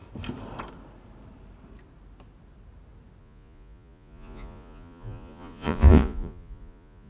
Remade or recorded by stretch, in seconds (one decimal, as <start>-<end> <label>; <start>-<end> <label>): 0.0-3.2 recorded; 3.2-7.1 remade